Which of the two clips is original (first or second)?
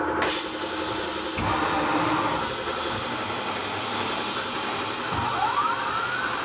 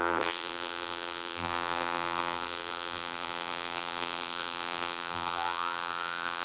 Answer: first